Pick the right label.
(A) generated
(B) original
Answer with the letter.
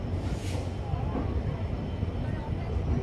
B